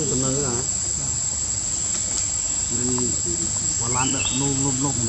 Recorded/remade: recorded